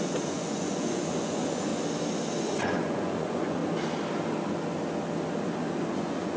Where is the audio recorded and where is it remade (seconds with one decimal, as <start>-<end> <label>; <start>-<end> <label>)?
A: 0.0-1.7 remade; 1.7-2.4 recorded; 2.4-3.6 remade; 3.6-5.9 recorded; 5.9-6.4 remade